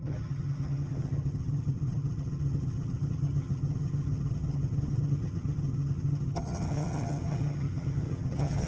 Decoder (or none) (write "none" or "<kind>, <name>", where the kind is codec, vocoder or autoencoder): vocoder, HiFi-GAN